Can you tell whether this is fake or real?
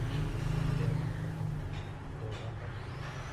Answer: real